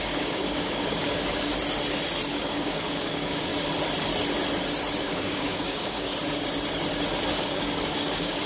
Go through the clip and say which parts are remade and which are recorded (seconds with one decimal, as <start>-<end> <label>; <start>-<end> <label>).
0.0-1.5 remade; 1.5-2.3 recorded; 2.3-3.5 remade; 3.5-5.0 recorded; 5.0-6.1 remade; 6.1-7.3 recorded; 7.3-8.5 remade